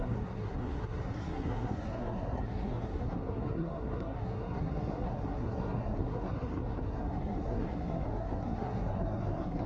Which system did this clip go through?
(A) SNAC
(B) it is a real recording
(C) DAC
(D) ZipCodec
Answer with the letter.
A